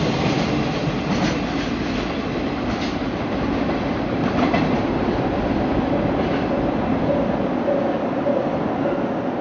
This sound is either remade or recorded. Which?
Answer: recorded